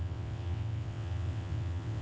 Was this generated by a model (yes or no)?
yes